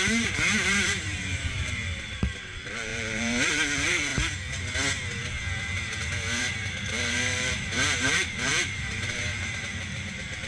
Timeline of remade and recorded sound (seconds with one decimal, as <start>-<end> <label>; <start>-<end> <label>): 0.0-4.1 remade; 4.1-6.4 recorded; 6.4-10.5 remade